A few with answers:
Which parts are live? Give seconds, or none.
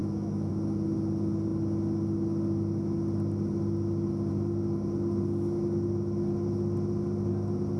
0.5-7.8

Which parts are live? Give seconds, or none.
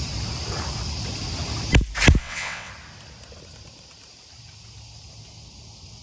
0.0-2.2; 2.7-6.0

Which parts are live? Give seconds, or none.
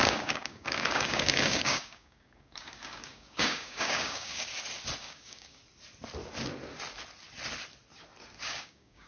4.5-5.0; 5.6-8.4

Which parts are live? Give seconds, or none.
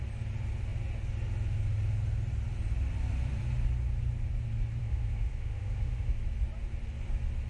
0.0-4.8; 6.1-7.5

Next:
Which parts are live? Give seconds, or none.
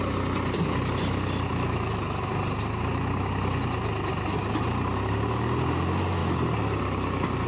0.0-1.5; 2.3-7.5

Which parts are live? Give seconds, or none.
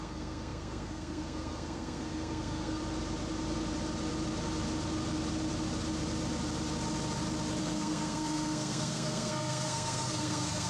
2.8-7.6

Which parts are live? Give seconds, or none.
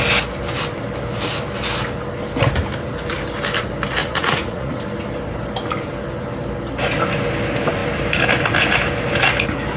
0.0-4.0; 4.8-9.8